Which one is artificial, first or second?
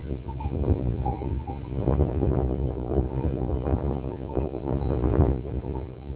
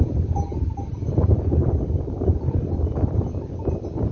first